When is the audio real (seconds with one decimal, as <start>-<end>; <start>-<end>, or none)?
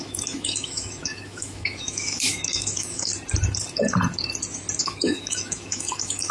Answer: 3.1-4.8